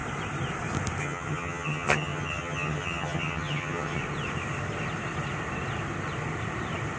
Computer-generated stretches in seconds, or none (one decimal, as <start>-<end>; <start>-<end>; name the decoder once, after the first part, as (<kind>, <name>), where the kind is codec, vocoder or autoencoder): 1.0-4.0 (vocoder, HiFi-GAN)